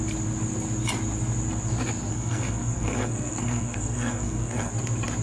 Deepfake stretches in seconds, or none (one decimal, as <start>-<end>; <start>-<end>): 2.1-4.7